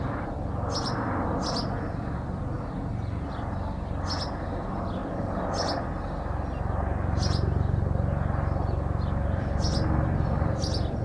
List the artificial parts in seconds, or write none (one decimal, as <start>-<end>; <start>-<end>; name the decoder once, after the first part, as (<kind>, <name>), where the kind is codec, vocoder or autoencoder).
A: none